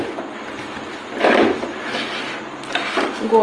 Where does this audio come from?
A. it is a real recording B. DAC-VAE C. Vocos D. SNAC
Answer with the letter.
A